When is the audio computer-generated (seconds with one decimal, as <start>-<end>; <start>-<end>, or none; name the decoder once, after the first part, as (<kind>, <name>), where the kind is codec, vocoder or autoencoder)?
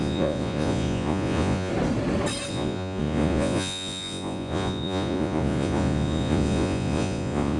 0.0-1.7 (vocoder, Vocos); 2.5-7.6